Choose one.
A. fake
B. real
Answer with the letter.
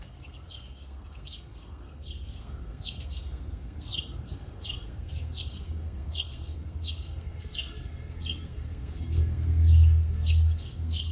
A